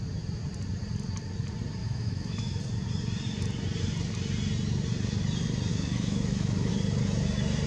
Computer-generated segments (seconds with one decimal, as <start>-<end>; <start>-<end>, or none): 1.8-2.6; 5.7-6.7